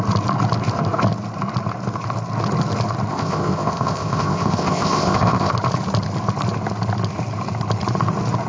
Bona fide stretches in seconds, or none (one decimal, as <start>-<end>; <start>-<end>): 0.0-3.1; 5.5-8.5